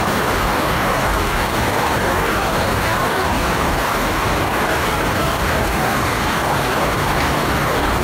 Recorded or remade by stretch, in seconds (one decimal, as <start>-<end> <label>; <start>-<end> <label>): 0.0-8.0 remade